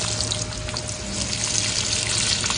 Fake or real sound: real